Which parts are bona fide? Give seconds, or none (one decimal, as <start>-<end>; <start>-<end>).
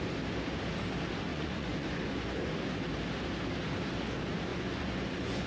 0.0-1.3; 2.5-4.5